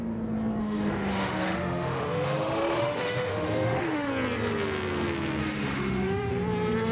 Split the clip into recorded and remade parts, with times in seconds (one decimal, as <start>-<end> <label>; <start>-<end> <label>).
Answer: 0.0-0.6 recorded; 0.6-4.1 remade; 4.1-5.4 recorded; 5.4-6.3 remade; 6.3-6.9 recorded